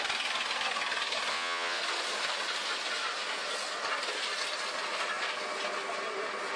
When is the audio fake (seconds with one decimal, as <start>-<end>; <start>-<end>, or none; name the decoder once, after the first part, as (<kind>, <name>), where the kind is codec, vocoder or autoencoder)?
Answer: 1.3-1.8 (vocoder, WaveNeXt)